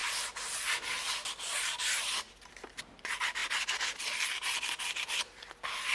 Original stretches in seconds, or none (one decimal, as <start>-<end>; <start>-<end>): 0.0-5.9